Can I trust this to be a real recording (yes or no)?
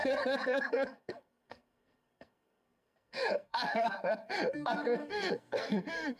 no